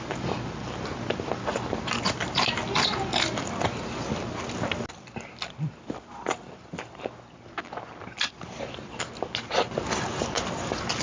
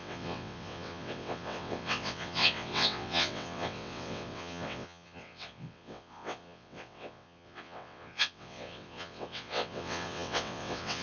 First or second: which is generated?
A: second